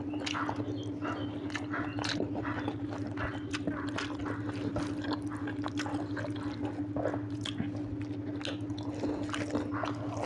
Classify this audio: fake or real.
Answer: real